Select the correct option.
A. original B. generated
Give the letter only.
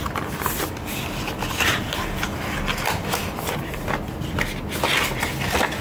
A